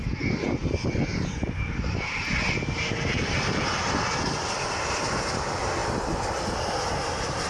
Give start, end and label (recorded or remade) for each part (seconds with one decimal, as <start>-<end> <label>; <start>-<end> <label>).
0.0-7.5 recorded